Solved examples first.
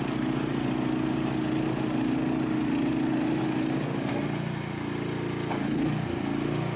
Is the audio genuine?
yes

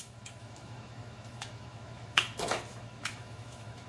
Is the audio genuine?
no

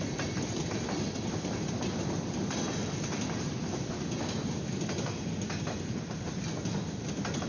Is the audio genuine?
yes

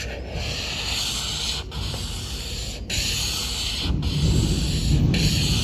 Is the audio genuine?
yes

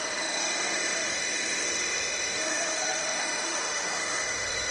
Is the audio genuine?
no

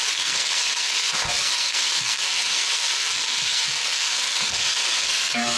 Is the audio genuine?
no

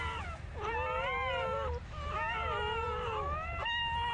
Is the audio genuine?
yes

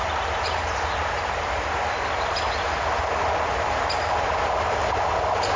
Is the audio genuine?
yes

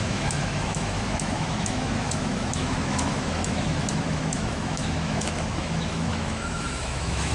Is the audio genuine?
no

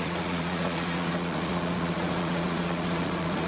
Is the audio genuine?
no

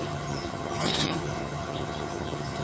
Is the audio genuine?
no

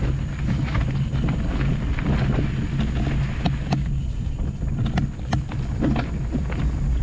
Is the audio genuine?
yes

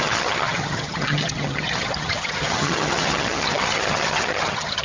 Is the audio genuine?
no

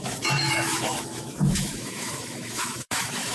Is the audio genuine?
no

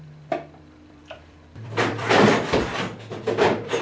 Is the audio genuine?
no